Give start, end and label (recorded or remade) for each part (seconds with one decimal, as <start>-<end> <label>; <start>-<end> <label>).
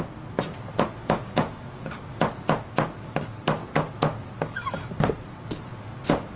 0.0-1.0 recorded; 1.0-2.1 remade; 2.1-6.4 recorded